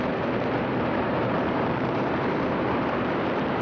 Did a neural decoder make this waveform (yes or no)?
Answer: yes